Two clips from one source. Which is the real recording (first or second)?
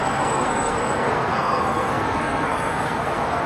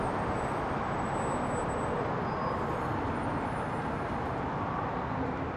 second